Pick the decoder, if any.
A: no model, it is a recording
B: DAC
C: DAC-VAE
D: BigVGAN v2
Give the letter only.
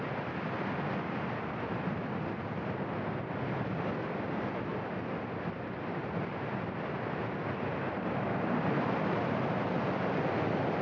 A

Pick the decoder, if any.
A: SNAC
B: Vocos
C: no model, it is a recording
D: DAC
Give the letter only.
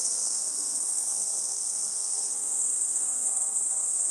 A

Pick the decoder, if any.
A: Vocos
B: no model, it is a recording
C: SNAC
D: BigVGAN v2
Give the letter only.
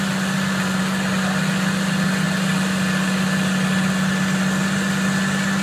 B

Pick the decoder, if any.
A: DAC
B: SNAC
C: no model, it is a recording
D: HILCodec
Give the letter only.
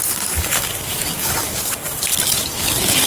A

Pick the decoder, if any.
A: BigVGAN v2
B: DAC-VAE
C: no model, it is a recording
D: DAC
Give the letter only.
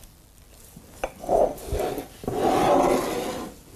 C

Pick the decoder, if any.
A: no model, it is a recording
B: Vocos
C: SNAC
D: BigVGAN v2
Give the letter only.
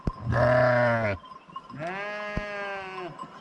A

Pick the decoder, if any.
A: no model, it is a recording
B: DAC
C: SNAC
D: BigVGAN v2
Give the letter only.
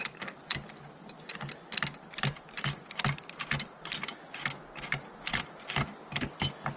A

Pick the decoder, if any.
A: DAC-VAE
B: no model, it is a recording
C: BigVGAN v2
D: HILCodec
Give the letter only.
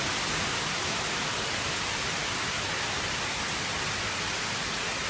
B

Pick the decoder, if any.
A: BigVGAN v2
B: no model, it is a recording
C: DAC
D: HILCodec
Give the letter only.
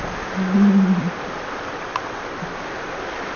B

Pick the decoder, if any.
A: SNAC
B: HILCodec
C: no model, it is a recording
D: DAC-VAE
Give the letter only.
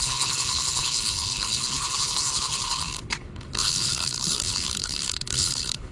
B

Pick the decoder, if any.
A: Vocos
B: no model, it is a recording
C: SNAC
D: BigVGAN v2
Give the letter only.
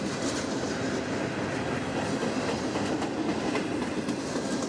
B